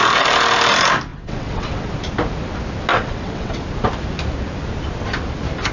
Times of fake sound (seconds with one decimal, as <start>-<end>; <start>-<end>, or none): 1.1-1.9; 2.9-3.6